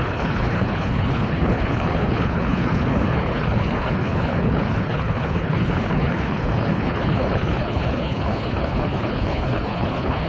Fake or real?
fake